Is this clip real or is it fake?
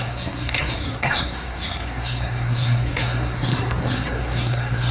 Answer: fake